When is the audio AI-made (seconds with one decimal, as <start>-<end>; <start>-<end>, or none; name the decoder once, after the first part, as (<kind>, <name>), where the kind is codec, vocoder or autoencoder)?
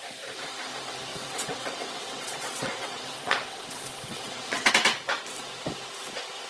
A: 1.1-4.7 (vocoder, WaveNeXt)